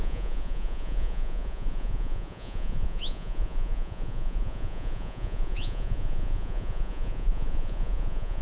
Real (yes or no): no